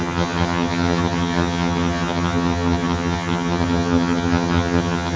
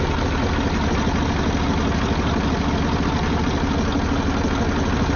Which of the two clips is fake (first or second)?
first